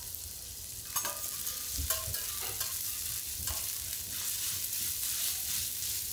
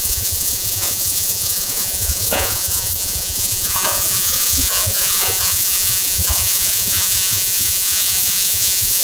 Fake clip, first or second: second